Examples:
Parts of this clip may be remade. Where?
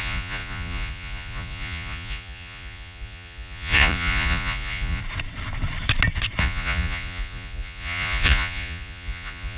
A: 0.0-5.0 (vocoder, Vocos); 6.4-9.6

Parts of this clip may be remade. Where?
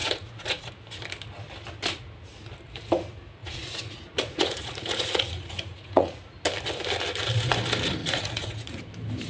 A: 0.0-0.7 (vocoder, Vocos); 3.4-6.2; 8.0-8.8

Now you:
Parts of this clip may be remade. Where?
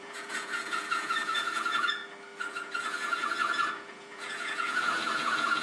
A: 0.0-2.0 (vocoder, Vocos); 2.5-5.6